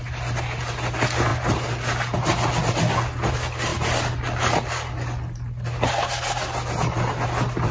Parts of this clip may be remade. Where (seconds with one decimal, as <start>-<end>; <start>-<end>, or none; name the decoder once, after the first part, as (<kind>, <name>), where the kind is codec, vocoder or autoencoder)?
none